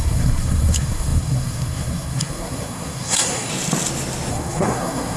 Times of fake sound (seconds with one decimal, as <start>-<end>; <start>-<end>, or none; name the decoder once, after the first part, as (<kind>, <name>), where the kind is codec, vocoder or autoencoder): 0.0-3.5 (codec, SNAC); 4.3-5.2

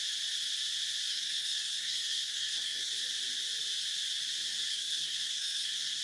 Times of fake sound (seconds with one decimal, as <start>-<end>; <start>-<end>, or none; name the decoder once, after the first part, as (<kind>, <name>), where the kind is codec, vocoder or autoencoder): 1.1-2.9 (codec, SNAC); 4.7-6.0

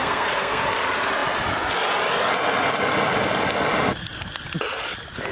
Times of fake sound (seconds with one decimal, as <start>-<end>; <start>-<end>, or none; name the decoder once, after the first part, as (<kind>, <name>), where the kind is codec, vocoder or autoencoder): 0.0-0.6 (codec, SNAC)

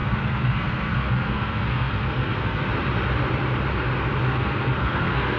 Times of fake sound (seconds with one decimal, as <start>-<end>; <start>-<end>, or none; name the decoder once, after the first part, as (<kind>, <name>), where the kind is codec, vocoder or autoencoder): 0.0-2.7 (codec, SNAC); 4.2-5.4

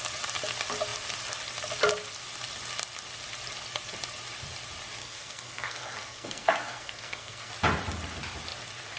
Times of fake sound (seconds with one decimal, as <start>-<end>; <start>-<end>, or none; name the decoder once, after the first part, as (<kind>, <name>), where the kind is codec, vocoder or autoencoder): 5.0-7.5 (codec, SNAC)

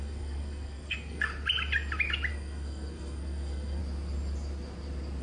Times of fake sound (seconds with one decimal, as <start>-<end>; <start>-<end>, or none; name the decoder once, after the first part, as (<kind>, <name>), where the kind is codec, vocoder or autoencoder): 0.0-1.3 (codec, SNAC); 2.3-3.8

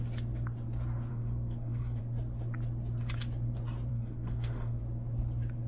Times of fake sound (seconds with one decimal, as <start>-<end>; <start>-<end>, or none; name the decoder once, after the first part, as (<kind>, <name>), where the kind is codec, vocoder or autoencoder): 1.1-2.0 (codec, SNAC); 3.9-4.8

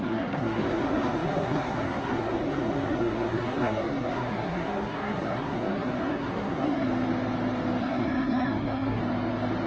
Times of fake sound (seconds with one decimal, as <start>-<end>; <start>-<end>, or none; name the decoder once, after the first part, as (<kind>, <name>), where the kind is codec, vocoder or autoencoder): 0.0-6.9 (codec, SNAC); 7.8-9.0